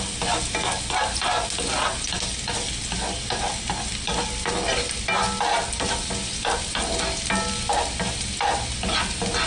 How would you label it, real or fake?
real